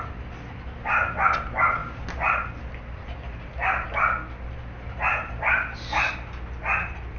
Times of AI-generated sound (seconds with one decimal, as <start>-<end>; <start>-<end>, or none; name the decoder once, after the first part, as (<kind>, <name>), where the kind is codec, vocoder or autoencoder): none